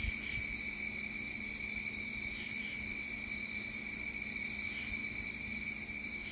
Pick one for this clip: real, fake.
real